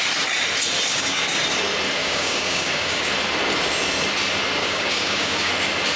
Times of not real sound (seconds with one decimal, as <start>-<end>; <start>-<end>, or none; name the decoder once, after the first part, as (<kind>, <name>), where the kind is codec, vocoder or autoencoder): 0.9-1.4 (codec, DAC); 2.0-3.1; 4.6-5.5